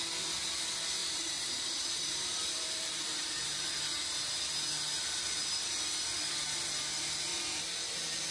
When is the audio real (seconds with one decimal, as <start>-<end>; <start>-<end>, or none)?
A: 0.0-1.0; 3.7-7.3